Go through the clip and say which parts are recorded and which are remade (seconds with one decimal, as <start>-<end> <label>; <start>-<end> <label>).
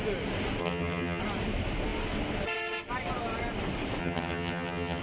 0.0-0.6 recorded; 0.6-1.2 remade; 1.2-4.0 recorded; 4.0-5.0 remade